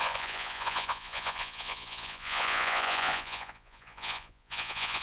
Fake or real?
fake